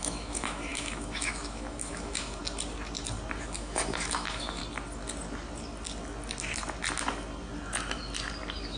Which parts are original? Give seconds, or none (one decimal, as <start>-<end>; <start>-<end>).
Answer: 2.4-3.4; 4.6-8.8